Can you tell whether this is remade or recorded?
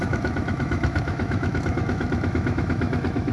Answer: remade